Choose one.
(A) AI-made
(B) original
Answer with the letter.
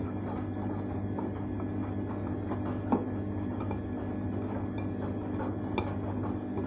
B